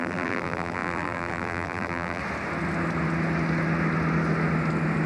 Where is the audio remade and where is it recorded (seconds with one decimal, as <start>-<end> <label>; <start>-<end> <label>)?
0.0-2.2 remade; 2.2-5.1 recorded